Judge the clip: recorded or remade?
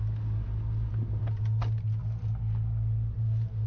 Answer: recorded